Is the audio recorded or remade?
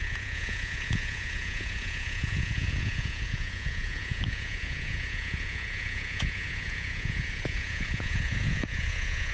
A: remade